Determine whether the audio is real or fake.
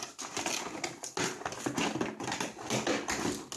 real